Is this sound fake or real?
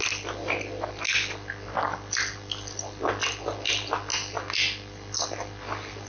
real